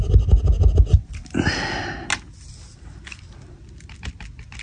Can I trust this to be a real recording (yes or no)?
yes